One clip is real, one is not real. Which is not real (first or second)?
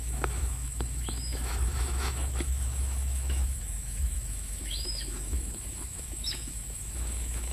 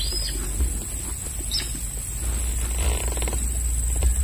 first